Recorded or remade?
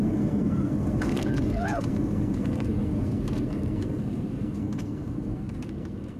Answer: remade